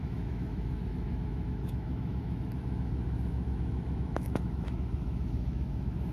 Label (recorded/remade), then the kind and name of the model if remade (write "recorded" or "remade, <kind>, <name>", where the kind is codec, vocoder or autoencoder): remade, autoencoder, DAC-VAE